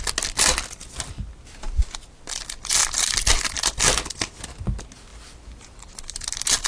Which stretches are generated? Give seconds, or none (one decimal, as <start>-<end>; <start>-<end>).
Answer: none